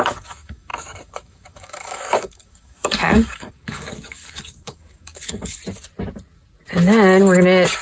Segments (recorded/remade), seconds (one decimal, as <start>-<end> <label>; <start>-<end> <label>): 0.0-5.6 remade; 5.6-7.8 recorded